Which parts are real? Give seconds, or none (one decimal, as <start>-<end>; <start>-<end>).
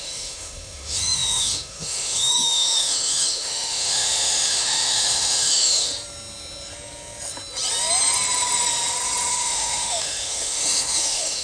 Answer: 5.9-9.3